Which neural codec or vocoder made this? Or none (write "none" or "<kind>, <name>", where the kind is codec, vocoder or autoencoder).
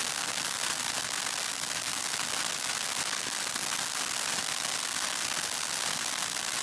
none